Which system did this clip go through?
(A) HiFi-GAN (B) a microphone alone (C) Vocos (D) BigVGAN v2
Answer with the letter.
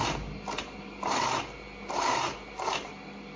B